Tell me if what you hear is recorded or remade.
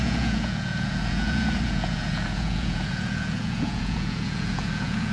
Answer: remade